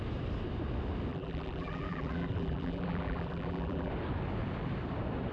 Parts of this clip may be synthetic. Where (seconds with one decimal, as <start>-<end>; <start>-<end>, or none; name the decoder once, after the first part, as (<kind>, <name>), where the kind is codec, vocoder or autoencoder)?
1.1-3.9 (vocoder, BigVGAN v2)